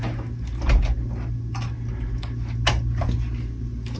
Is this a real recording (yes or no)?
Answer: yes